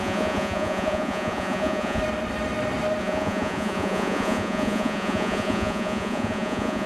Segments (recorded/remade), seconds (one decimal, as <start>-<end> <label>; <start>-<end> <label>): 0.0-2.0 remade; 2.0-3.0 recorded; 3.0-6.9 remade